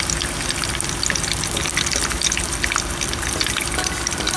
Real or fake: real